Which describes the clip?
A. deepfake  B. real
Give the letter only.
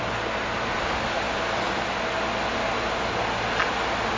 B